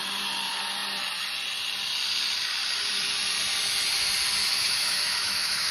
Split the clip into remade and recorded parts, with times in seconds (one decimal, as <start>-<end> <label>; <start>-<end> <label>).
0.0-4.4 recorded; 4.4-5.7 remade